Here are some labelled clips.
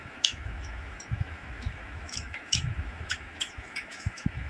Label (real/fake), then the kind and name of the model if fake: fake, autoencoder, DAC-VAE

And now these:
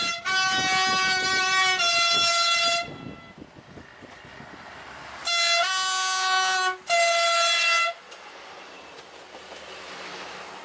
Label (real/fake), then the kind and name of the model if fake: real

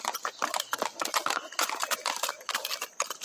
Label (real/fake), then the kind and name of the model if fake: real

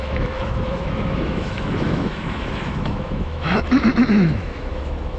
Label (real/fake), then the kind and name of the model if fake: fake, autoencoder, DAC-VAE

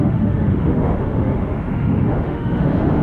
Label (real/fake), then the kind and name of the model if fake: fake, autoencoder, DAC-VAE